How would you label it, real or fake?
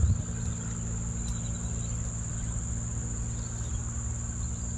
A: real